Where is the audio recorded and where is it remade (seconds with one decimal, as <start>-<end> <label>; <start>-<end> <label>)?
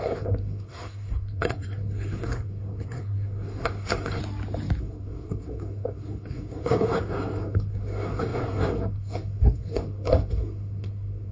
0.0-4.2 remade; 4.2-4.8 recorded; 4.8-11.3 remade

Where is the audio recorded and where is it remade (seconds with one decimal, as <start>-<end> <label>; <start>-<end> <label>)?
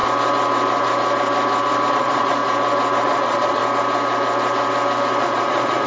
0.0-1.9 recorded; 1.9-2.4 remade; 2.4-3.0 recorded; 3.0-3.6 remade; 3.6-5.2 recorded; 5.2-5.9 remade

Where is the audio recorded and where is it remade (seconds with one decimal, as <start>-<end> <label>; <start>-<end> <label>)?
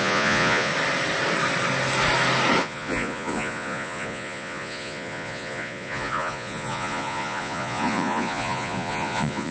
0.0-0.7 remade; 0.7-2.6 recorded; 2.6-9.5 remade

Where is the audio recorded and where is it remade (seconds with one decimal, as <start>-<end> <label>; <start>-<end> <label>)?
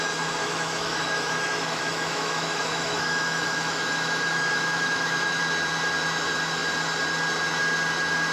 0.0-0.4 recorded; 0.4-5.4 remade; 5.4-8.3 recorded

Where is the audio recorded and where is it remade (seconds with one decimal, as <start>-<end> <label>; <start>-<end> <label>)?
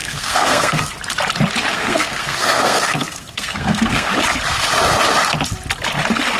0.0-0.9 remade; 0.9-1.7 recorded; 1.7-4.1 remade; 4.1-6.4 recorded